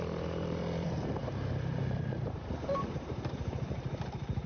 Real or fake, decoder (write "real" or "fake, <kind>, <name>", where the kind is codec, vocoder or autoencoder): fake, vocoder, BigVGAN v2